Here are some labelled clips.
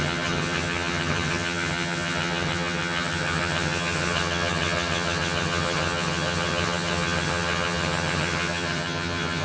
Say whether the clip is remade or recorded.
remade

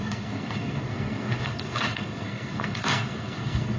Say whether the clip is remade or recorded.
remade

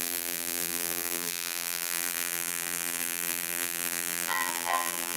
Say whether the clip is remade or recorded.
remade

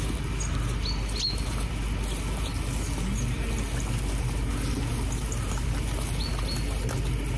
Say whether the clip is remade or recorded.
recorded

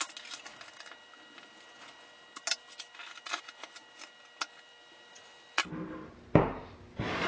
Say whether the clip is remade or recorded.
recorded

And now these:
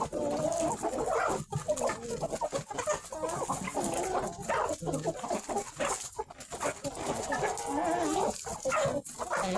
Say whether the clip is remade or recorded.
recorded